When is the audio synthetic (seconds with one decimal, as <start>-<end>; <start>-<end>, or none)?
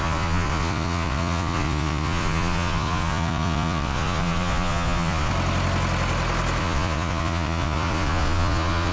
0.0-5.3; 6.6-8.9